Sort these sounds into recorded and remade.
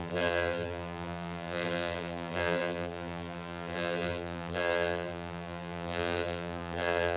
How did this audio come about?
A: remade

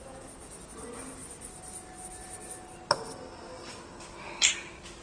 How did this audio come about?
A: recorded